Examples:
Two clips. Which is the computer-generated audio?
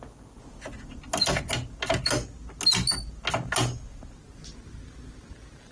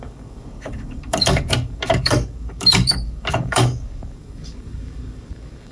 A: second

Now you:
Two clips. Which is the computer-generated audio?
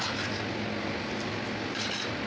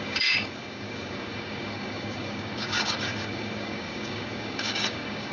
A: second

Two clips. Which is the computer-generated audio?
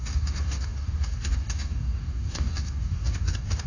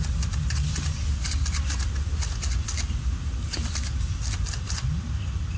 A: first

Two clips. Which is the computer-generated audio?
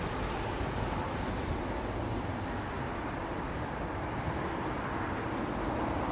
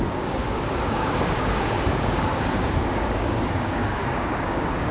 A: second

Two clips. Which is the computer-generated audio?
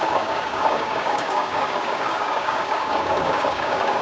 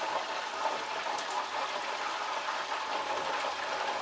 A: first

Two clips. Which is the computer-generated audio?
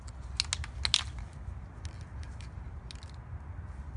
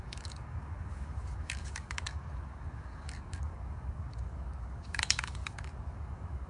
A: second